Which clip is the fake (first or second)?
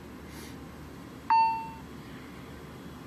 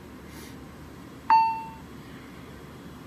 second